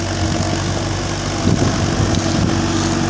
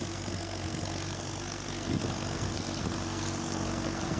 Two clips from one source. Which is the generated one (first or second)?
second